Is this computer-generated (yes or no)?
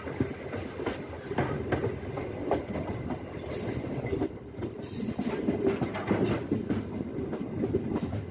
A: no